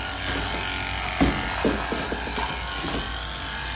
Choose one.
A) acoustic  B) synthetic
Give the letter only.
A